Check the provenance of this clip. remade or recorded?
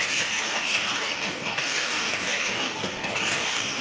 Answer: remade